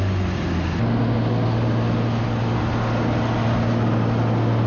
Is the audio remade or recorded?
recorded